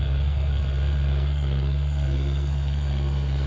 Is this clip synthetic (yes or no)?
yes